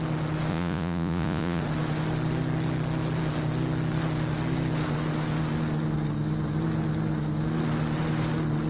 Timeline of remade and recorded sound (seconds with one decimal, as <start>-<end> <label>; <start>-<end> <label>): 0.0-0.5 recorded; 0.5-1.6 remade; 1.6-8.7 recorded